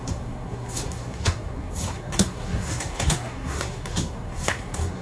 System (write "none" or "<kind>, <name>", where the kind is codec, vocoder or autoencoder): codec, SNAC